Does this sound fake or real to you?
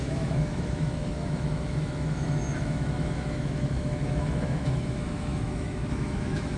fake